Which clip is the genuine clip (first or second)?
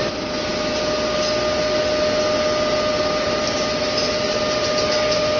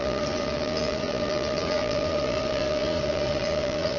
first